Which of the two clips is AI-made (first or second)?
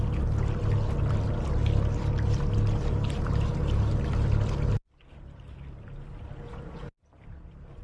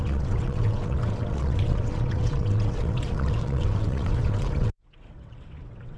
second